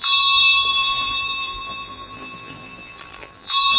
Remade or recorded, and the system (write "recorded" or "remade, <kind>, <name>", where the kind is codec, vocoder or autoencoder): remade, vocoder, BigVGAN v2